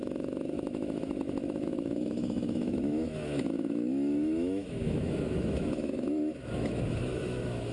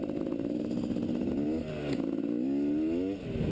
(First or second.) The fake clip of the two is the first